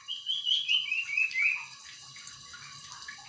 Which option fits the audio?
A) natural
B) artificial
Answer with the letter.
B